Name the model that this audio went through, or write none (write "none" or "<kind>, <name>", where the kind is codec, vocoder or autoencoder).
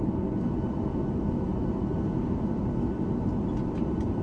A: none